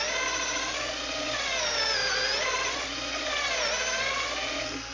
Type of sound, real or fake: real